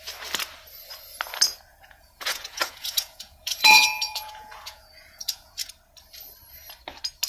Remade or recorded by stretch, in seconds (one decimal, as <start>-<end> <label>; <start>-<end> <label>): 0.0-1.7 recorded; 1.7-5.7 remade; 5.7-7.3 recorded